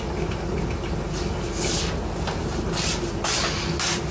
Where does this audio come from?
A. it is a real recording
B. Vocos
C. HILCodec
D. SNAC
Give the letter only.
A